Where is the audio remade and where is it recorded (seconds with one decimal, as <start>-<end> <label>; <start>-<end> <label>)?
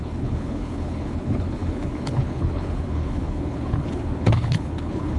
0.0-5.2 remade